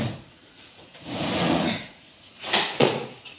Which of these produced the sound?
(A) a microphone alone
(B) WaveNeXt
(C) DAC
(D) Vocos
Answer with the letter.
D